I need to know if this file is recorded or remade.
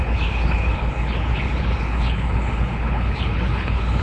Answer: remade